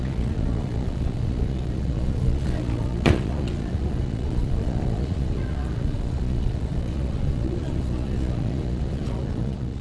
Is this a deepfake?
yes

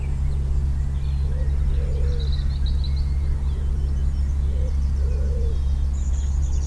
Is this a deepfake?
no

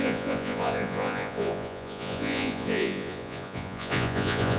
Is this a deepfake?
yes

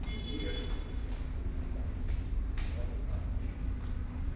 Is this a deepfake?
no